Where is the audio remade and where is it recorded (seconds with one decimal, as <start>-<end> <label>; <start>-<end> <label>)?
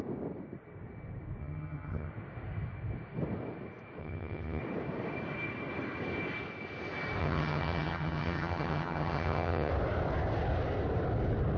0.0-1.4 recorded; 1.4-2.1 remade; 2.1-4.0 recorded; 4.0-4.6 remade; 4.6-7.2 recorded; 7.2-9.7 remade; 9.7-11.6 recorded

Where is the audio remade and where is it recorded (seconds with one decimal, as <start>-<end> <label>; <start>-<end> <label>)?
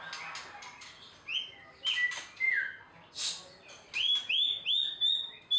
0.0-5.6 recorded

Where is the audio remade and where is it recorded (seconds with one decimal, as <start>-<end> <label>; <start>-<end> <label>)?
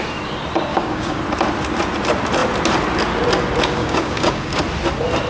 0.0-0.7 recorded; 0.7-1.2 remade; 1.2-3.8 recorded; 3.8-4.6 remade; 4.6-5.3 recorded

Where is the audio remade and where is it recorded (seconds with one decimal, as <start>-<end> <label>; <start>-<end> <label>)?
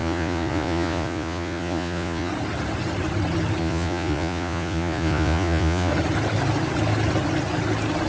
0.0-2.3 remade; 2.3-3.6 recorded; 3.6-5.9 remade; 5.9-8.1 recorded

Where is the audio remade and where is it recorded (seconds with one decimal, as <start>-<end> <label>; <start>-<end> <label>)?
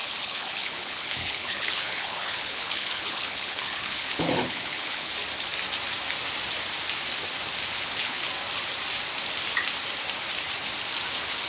0.0-5.1 remade; 5.1-7.7 recorded; 7.7-8.3 remade; 8.3-11.5 recorded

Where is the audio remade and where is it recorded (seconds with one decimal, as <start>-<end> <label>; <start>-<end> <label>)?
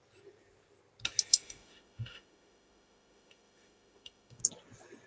0.0-1.3 recorded; 1.3-4.4 remade; 4.4-5.1 recorded